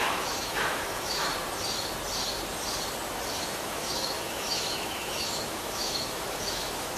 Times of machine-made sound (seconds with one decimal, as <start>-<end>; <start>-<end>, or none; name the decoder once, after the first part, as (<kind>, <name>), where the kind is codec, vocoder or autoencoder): 0.0-1.3 (autoencoder, DAC-VAE); 3.4-7.0